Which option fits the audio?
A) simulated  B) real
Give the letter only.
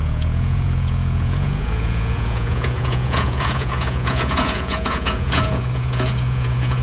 A